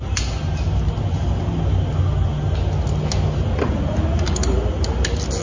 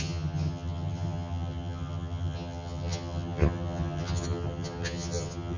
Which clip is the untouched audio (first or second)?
first